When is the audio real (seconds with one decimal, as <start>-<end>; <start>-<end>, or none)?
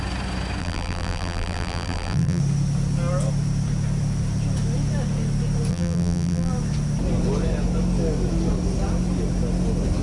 0.0-0.6; 2.4-5.7; 6.5-10.0